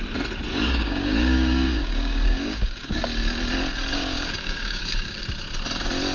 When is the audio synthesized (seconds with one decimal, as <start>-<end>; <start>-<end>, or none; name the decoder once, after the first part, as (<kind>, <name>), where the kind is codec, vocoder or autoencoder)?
0.5-3.0 (codec, DAC); 3.9-5.2